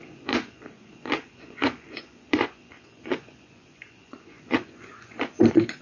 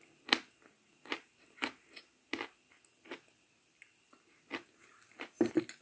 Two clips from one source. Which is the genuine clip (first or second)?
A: second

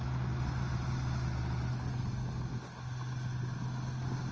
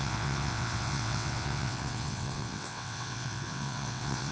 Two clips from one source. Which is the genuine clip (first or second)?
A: first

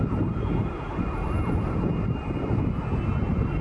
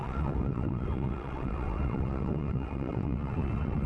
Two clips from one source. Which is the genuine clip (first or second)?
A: first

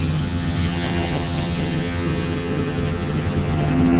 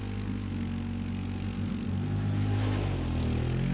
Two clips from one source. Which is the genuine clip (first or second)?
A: second